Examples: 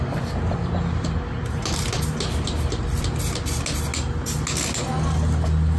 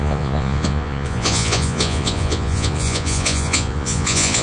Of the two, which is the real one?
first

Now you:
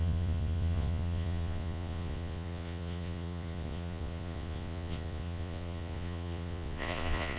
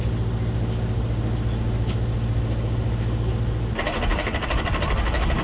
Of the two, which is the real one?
second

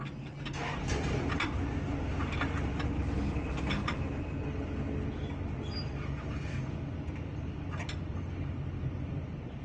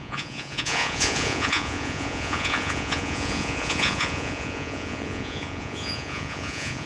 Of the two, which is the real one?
first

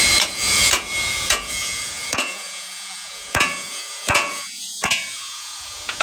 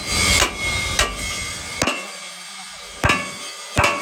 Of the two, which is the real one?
second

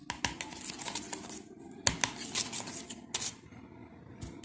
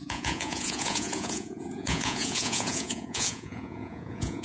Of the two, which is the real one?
first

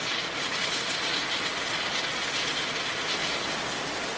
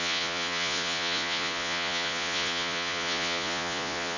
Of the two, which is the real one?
first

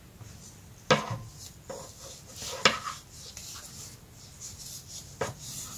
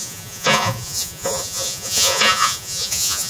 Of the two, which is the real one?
first